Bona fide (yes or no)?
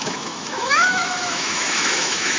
no